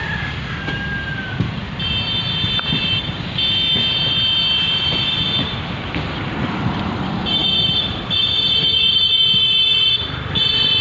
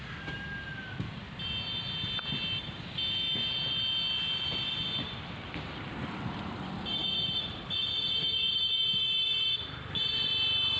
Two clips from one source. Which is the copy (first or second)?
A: first